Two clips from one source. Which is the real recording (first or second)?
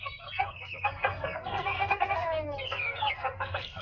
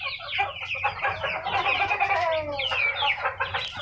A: second